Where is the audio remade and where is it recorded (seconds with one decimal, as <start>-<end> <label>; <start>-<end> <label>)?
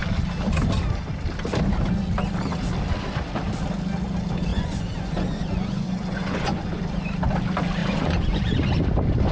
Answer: 0.0-4.5 recorded; 4.5-6.8 remade; 6.8-7.8 recorded; 7.8-8.4 remade; 8.4-9.3 recorded